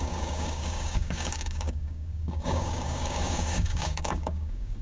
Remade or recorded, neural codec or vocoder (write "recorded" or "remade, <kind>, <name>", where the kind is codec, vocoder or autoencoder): remade, codec, DAC